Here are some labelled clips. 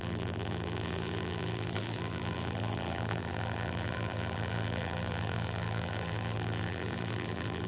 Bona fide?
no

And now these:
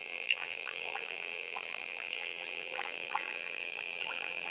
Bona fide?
no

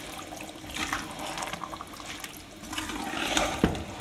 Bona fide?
yes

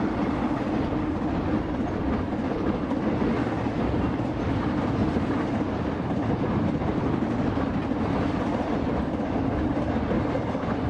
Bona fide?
yes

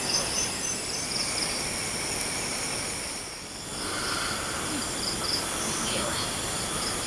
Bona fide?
no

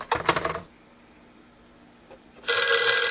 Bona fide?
no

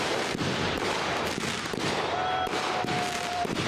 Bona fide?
no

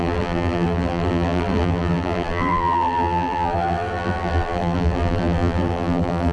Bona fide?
no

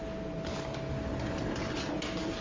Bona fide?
yes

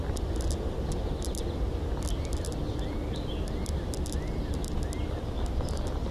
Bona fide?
yes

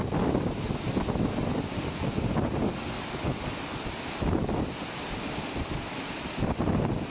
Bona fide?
yes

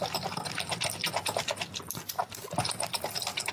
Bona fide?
no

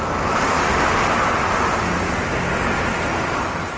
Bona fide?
yes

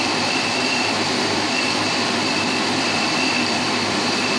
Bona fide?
no